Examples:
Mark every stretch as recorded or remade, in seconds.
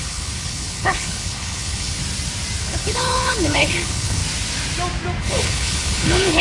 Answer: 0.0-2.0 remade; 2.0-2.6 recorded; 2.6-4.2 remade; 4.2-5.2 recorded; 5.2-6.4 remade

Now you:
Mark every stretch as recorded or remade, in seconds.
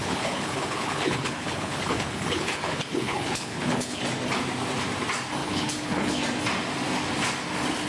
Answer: 0.0-4.0 remade; 4.0-5.4 recorded; 5.4-6.2 remade; 6.2-7.9 recorded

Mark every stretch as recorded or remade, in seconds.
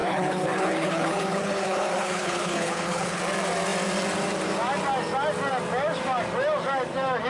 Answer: 0.0-3.2 remade; 3.2-7.3 recorded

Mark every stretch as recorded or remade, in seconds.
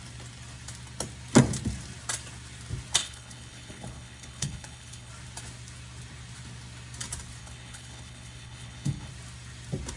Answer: 0.0-3.0 recorded; 3.0-5.1 remade; 5.1-7.4 recorded; 7.4-9.1 remade; 9.1-10.0 recorded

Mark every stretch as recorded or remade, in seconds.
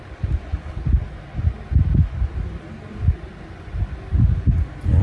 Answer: 0.0-0.5 recorded; 0.5-1.0 remade; 1.0-5.0 recorded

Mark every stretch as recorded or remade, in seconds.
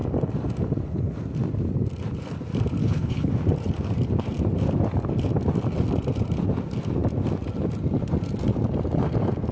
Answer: 0.0-2.8 recorded; 2.8-3.3 remade; 3.3-9.5 recorded